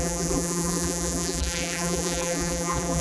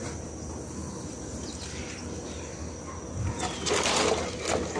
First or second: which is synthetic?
first